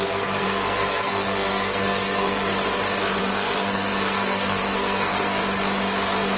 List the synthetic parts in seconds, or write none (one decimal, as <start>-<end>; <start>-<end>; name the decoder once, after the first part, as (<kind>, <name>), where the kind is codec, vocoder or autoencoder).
0.0-2.5 (codec, SNAC); 3.2-5.4